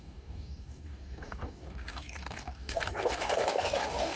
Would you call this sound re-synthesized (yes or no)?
yes